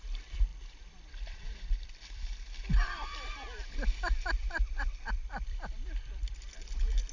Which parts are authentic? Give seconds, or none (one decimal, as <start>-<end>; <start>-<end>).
0.0-0.5; 2.1-4.9; 6.4-7.1